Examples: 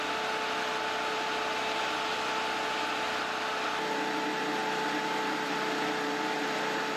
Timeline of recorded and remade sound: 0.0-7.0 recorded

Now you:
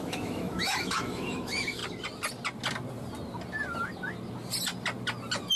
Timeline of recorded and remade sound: 0.0-1.8 remade; 1.8-5.6 recorded

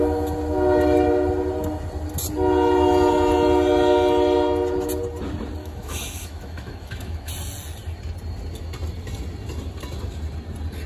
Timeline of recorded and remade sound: 0.0-5.6 recorded; 5.6-7.3 remade; 7.3-10.9 recorded